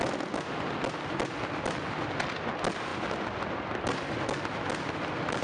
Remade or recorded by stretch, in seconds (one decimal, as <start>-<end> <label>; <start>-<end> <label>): 0.0-5.4 recorded